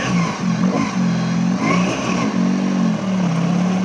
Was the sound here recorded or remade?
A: recorded